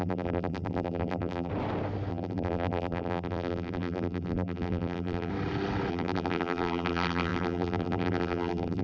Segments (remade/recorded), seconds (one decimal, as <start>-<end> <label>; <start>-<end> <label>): 0.0-1.5 remade; 1.5-2.1 recorded; 2.1-5.3 remade; 5.3-5.9 recorded; 5.9-8.8 remade